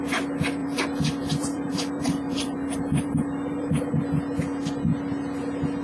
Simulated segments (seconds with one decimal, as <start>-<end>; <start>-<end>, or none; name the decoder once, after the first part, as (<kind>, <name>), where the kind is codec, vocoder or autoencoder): 0.6-4.1 (vocoder, BigVGAN v2)